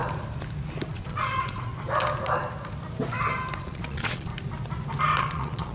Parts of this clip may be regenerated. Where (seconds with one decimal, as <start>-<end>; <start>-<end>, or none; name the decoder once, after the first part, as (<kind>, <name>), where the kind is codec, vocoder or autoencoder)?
0.9-1.7 (vocoder, Vocos); 3.6-4.3; 5.2-5.7